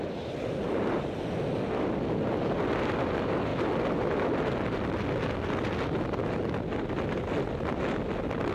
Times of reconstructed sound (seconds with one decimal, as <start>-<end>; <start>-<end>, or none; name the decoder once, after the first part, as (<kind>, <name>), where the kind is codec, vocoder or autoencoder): none